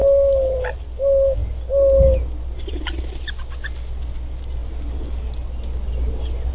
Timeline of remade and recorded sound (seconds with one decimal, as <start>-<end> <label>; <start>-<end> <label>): 0.0-6.5 recorded